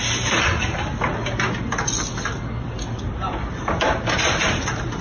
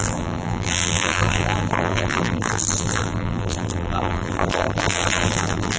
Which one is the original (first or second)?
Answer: first